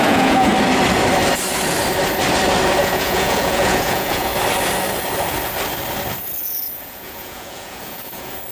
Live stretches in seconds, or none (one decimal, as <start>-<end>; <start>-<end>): 0.5-2.8; 4.3-6.4